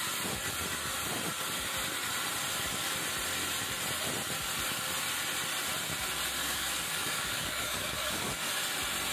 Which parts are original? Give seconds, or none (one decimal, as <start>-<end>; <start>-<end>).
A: 0.0-6.4; 8.3-9.1